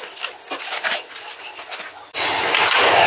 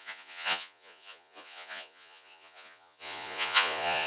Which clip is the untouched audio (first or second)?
first